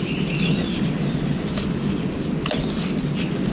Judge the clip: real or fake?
real